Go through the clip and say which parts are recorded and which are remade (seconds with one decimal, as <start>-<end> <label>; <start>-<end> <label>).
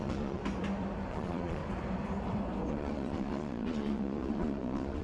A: 0.0-0.4 remade; 0.4-1.1 recorded; 1.1-1.6 remade; 1.6-2.7 recorded; 2.7-5.0 remade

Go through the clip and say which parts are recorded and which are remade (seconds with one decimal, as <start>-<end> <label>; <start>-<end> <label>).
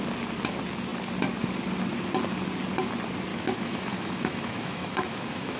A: 0.0-3.3 recorded; 3.3-5.6 remade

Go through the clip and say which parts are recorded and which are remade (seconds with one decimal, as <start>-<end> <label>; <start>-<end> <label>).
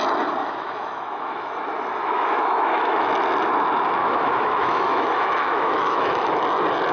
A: 0.0-0.4 recorded; 0.4-1.5 remade; 1.5-2.0 recorded; 2.0-3.1 remade; 3.1-4.0 recorded; 4.0-6.4 remade; 6.4-6.9 recorded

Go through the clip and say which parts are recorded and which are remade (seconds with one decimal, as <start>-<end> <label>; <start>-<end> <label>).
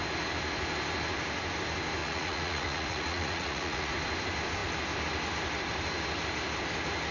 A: 0.0-2.0 recorded; 2.0-3.9 remade; 3.9-7.1 recorded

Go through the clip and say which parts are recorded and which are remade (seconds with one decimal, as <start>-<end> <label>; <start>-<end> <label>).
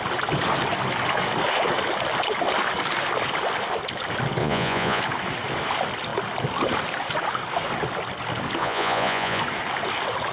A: 0.0-4.4 recorded; 4.4-5.0 remade; 5.0-8.6 recorded; 8.6-9.4 remade; 9.4-10.3 recorded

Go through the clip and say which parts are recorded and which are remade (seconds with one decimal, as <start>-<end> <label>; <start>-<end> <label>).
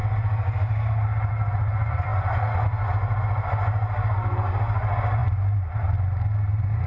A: 0.0-6.9 recorded